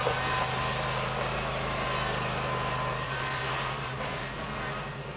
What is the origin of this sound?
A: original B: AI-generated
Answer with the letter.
A